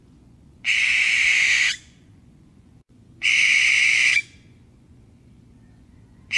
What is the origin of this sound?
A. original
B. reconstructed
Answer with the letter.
B